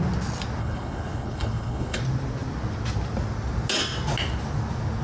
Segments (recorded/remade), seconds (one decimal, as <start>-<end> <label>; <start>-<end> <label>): 0.0-0.6 recorded; 0.6-2.0 remade; 2.0-5.0 recorded